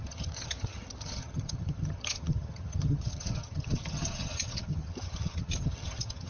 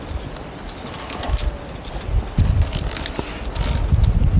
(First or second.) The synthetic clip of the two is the first